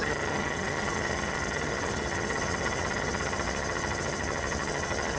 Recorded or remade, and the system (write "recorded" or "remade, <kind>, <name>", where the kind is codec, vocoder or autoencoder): remade, vocoder, HiFi-GAN